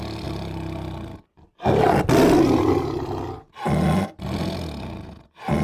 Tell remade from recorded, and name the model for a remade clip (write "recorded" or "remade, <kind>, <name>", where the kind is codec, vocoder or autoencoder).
recorded